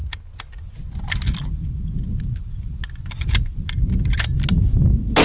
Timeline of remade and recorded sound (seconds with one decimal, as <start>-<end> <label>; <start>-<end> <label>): 0.0-5.2 recorded